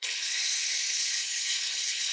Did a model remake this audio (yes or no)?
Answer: yes